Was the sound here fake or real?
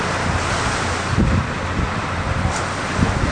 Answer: real